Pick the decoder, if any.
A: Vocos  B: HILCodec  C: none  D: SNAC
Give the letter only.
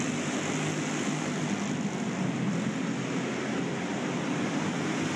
C